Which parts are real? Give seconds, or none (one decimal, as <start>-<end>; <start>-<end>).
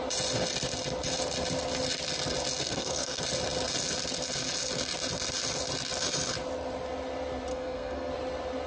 0.0-2.6; 3.2-7.5; 8.1-8.7